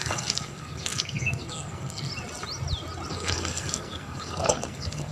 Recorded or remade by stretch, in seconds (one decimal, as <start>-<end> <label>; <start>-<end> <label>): 0.0-2.1 remade; 2.1-3.1 recorded; 3.1-5.1 remade